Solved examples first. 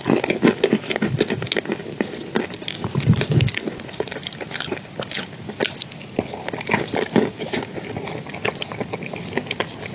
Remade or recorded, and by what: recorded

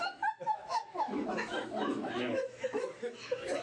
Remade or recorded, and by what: remade, autoencoder, DAC-VAE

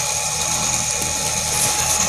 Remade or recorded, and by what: recorded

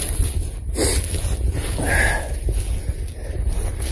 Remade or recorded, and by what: recorded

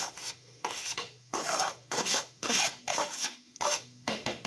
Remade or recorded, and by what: remade, autoencoder, DAC-VAE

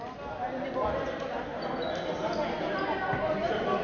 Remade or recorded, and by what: recorded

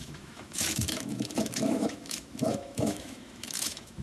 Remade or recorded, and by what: remade, autoencoder, DAC-VAE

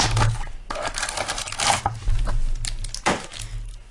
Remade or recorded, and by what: recorded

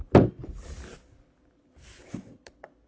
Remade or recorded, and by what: recorded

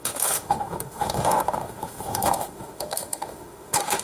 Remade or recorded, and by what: remade, autoencoder, DAC-VAE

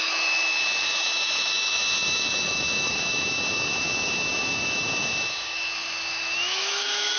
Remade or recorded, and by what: remade, autoencoder, DAC-VAE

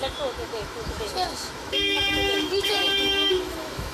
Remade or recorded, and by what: remade, autoencoder, DAC-VAE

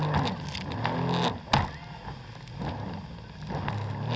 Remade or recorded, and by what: recorded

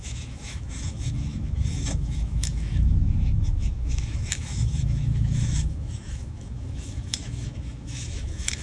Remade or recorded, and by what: remade, autoencoder, DAC-VAE